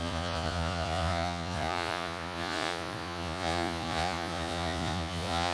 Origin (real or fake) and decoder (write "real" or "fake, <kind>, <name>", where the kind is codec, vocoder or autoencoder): fake, vocoder, Vocos